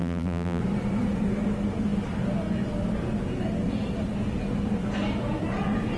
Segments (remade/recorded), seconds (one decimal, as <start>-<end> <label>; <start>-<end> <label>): 0.0-0.6 remade; 0.6-6.0 recorded